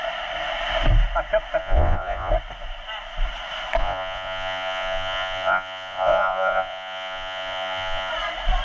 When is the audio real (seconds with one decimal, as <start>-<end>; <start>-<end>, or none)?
0.0-1.6; 2.3-3.8; 8.1-8.6